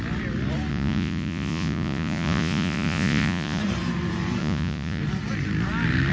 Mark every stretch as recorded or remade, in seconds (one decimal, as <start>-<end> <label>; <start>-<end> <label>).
0.0-0.7 recorded; 0.7-3.6 remade; 3.6-4.4 recorded; 4.4-5.0 remade; 5.0-6.1 recorded